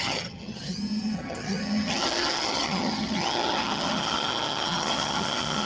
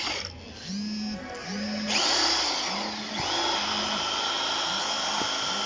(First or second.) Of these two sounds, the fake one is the first